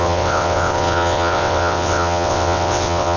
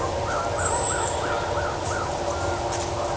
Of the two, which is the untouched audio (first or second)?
second